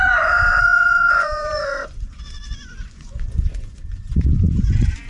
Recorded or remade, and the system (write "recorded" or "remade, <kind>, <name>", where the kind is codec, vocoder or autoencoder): remade, vocoder, Vocos